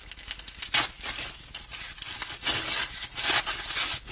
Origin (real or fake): real